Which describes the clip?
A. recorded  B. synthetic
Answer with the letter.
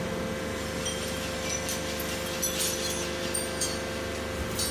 A